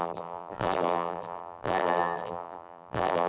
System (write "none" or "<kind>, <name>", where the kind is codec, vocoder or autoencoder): vocoder, BigVGAN v2